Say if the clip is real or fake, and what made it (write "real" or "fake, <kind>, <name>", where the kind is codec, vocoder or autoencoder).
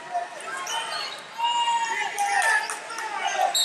real